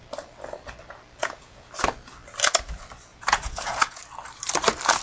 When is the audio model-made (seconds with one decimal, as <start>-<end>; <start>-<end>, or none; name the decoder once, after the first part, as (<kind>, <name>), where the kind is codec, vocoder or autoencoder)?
1.2-1.7 (vocoder, Vocos); 3.1-4.0